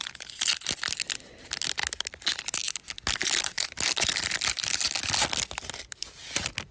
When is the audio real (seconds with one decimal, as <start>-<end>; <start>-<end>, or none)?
0.0-6.7